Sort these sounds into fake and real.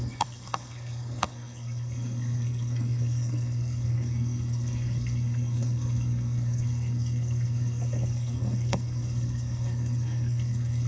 fake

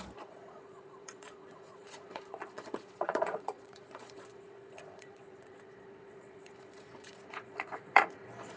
fake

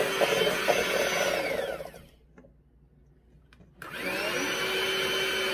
real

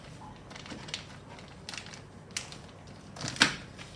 real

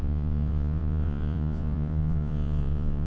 fake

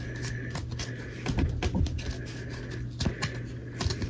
real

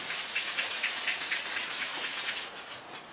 fake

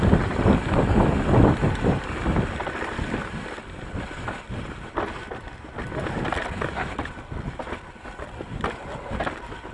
real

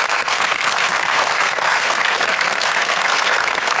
fake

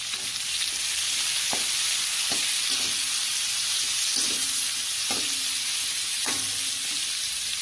real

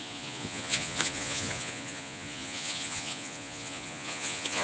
fake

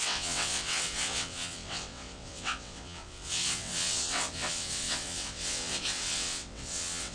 fake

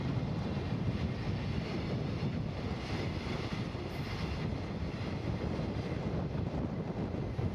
real